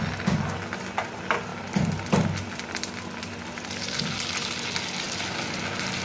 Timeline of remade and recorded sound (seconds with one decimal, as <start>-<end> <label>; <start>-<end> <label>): 0.0-6.0 recorded